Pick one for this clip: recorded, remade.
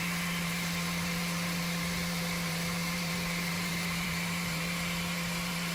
remade